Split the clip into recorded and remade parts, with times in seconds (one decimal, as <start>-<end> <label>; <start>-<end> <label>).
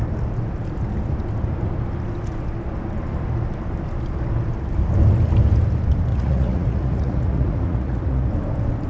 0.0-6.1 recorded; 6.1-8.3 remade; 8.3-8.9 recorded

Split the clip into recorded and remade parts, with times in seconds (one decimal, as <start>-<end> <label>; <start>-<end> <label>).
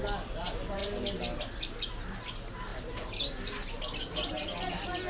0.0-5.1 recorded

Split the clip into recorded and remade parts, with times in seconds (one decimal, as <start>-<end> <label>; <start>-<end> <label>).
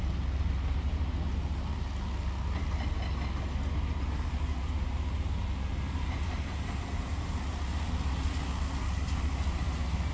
0.0-10.1 recorded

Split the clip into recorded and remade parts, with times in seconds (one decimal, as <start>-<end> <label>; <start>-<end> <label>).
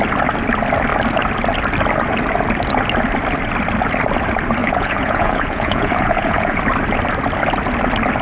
0.0-4.6 recorded; 4.6-6.6 remade; 6.6-8.2 recorded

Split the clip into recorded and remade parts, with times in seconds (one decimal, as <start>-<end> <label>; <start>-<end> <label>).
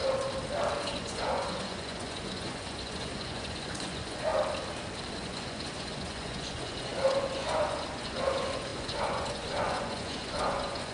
0.0-0.8 recorded; 0.8-4.3 remade; 4.3-5.1 recorded; 5.1-10.9 remade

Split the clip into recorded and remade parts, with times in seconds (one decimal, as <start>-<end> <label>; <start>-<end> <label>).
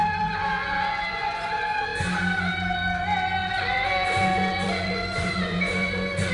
0.0-1.5 remade; 1.5-3.4 recorded; 3.4-6.3 remade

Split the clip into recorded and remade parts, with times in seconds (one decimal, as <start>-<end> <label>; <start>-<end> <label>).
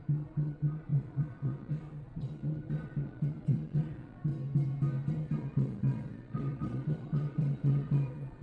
0.0-4.3 remade; 4.3-5.1 recorded; 5.1-8.4 remade